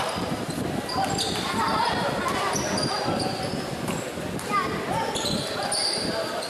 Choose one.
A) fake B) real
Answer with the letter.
B